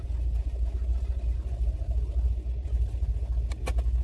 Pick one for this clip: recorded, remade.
recorded